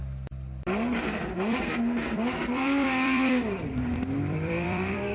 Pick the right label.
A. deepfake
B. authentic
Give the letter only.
A